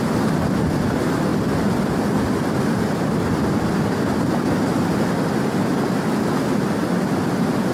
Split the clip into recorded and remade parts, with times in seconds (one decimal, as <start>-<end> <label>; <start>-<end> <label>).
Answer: 0.0-7.7 recorded